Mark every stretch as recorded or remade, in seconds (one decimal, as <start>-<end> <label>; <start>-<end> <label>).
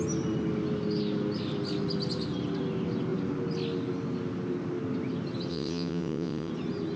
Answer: 0.0-5.5 recorded; 5.5-6.5 remade; 6.5-7.0 recorded